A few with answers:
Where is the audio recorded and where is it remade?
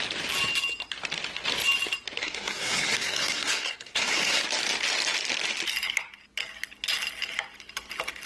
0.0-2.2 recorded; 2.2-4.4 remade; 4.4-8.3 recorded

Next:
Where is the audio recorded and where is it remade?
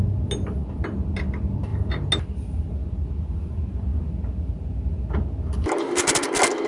0.0-6.7 recorded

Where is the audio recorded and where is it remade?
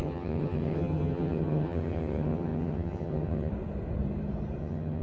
0.0-3.5 remade; 3.5-4.6 recorded; 4.6-5.0 remade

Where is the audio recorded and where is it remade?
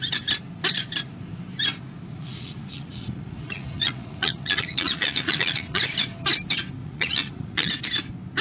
0.0-2.1 recorded; 2.1-5.8 remade; 5.8-6.8 recorded; 6.8-7.7 remade; 7.7-8.4 recorded